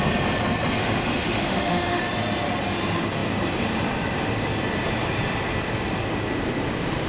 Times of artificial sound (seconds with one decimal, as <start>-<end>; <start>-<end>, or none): 0.8-2.0